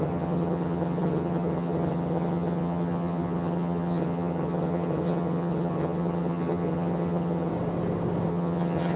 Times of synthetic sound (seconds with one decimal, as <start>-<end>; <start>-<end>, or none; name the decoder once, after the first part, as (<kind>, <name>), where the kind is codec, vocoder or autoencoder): 0.0-7.5 (vocoder, HiFi-GAN); 8.3-9.0